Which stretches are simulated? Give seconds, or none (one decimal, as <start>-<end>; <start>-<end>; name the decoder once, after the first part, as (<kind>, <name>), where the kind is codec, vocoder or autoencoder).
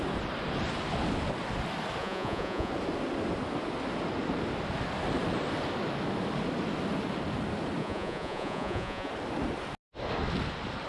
2.0-2.7 (vocoder, Vocos); 7.8-9.1